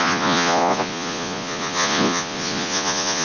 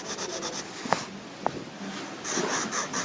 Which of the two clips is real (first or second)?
second